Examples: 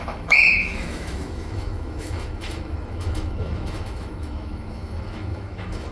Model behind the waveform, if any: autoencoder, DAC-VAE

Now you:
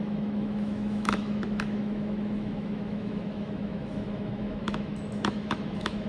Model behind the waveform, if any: autoencoder, DAC-VAE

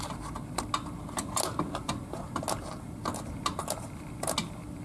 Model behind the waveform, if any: none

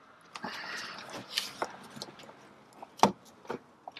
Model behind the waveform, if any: none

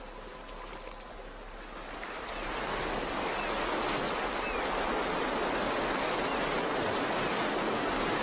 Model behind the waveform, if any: none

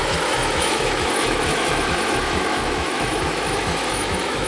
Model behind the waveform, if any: autoencoder, DAC-VAE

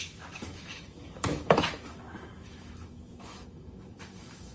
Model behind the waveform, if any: autoencoder, DAC-VAE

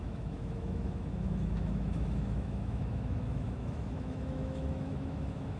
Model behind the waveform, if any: autoencoder, DAC-VAE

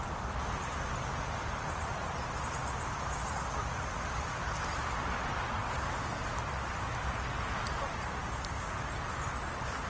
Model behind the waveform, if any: none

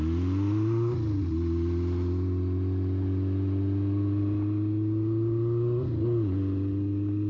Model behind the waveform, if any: none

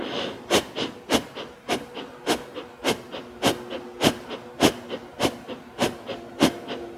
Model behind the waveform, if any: none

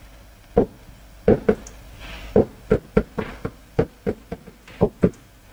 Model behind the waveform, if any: none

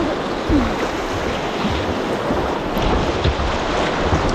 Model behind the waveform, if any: none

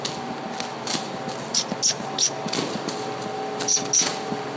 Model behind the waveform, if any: none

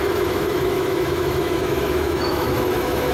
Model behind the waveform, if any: autoencoder, DAC-VAE